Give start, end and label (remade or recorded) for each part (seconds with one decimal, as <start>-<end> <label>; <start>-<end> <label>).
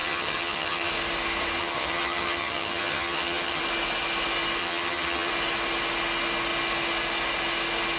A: 0.0-0.9 remade; 0.9-1.6 recorded; 1.6-3.6 remade; 3.6-4.6 recorded; 4.6-5.3 remade; 5.3-8.0 recorded